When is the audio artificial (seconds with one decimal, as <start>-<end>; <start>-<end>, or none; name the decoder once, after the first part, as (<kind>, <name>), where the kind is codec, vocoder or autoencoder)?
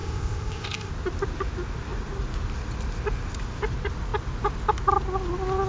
0.0-0.9 (codec, ZipCodec)